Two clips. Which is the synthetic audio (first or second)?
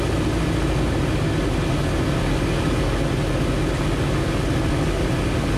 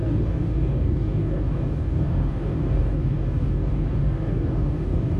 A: second